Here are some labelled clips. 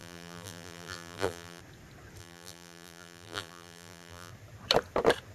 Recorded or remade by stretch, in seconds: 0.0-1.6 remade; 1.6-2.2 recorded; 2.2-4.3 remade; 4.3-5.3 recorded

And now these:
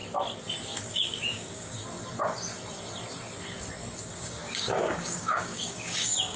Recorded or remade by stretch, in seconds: 0.0-0.8 recorded; 0.8-1.8 remade; 1.8-4.0 recorded; 4.0-6.4 remade

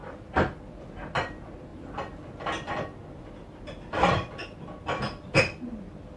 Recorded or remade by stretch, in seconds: 0.0-6.2 recorded

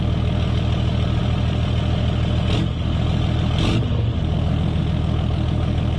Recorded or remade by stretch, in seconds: 0.0-6.0 recorded

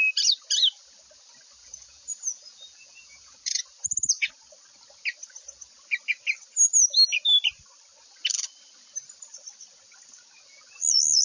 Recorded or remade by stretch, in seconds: 0.0-1.6 recorded; 1.6-3.6 remade; 3.6-11.2 recorded

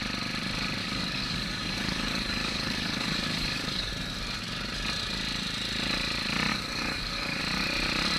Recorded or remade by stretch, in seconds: 0.0-0.8 recorded; 0.8-3.9 remade; 3.9-6.5 recorded; 6.5-7.4 remade; 7.4-8.2 recorded